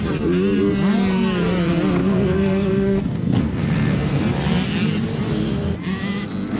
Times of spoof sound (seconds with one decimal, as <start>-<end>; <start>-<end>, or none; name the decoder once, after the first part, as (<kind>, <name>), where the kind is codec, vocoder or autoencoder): 2.0-4.2 (codec, SNAC)